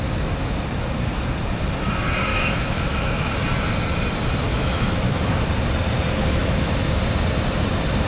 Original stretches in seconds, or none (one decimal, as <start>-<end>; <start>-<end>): 0.0-2.3; 3.3-4.5; 5.5-6.4; 7.0-8.1